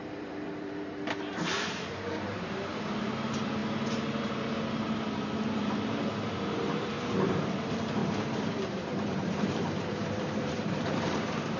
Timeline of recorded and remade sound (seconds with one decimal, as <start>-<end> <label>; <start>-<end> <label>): 0.0-11.6 remade